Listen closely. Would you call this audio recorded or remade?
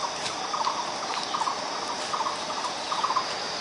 recorded